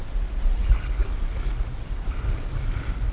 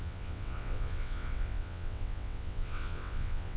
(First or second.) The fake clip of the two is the second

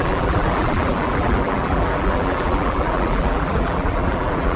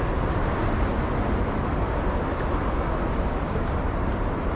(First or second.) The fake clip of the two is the first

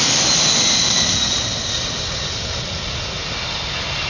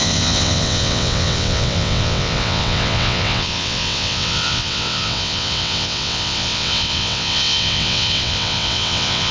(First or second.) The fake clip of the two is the second